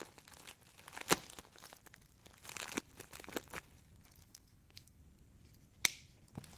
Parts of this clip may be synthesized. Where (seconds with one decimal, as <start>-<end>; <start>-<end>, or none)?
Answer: 4.2-5.0